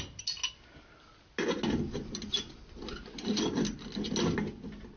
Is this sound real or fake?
real